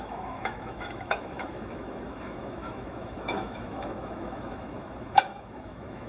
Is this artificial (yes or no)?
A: yes